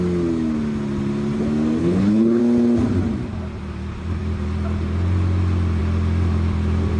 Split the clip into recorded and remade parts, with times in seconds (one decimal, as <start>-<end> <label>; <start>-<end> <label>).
0.0-1.8 recorded; 1.8-2.4 remade; 2.4-7.0 recorded